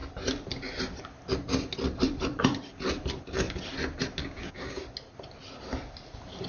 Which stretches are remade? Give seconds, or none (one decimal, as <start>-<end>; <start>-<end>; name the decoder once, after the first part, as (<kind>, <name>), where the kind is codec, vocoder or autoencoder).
4.2-4.8 (codec, DAC)